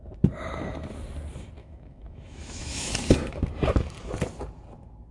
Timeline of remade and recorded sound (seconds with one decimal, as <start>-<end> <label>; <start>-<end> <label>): 0.0-1.6 recorded; 1.6-2.9 remade; 2.9-5.1 recorded